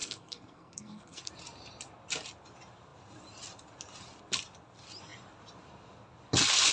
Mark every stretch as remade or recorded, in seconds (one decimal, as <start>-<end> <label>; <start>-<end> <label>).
0.0-1.3 remade; 1.3-6.7 recorded